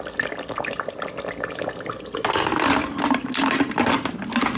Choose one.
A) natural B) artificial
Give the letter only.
A